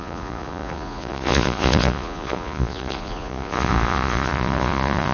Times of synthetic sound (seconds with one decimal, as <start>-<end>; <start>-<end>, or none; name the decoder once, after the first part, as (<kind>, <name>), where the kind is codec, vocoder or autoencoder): 0.0-5.1 (vocoder, Vocos)